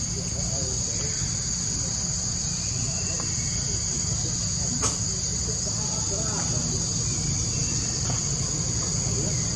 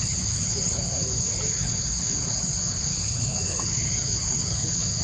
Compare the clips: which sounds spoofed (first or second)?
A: second